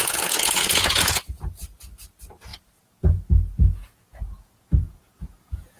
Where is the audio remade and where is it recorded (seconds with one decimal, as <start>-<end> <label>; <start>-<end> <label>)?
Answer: 0.0-1.4 remade; 1.4-2.5 recorded; 2.5-5.8 remade